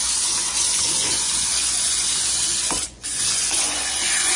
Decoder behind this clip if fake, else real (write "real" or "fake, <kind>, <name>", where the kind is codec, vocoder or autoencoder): fake, vocoder, Vocos